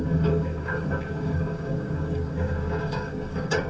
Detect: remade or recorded remade